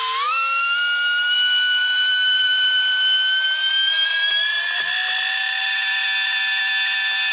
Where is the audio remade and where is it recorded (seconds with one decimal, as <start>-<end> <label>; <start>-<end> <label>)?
0.0-7.3 recorded